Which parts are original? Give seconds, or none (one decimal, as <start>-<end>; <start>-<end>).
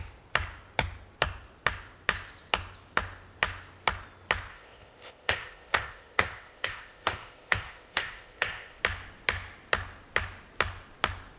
0.0-4.5; 8.8-11.4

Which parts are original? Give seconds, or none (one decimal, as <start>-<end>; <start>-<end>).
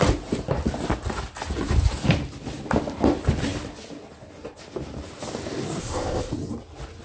0.0-5.8; 6.3-7.0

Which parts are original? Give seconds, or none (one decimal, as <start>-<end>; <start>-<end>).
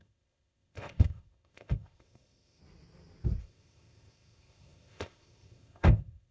2.6-3.4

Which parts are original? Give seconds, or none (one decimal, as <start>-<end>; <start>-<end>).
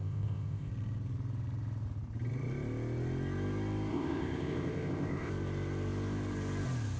0.7-3.9; 5.3-7.0